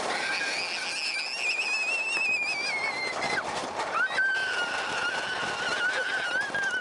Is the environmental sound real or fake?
real